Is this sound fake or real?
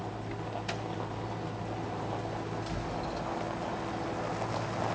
real